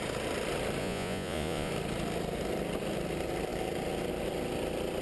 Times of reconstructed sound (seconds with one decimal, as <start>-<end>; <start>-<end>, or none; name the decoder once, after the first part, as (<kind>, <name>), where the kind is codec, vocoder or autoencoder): 0.8-1.7 (vocoder, Vocos)